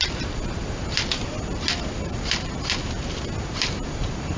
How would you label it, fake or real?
real